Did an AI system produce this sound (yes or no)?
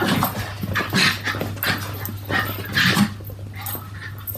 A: no